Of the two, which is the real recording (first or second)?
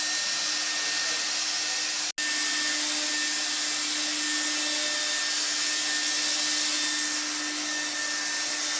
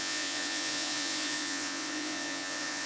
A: first